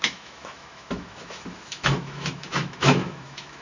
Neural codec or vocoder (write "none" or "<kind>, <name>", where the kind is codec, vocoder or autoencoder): autoencoder, DAC-VAE